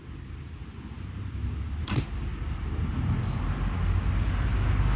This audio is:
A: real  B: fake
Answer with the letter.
A